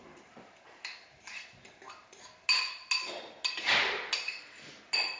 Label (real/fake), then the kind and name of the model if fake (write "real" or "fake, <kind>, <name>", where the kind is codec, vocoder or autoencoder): real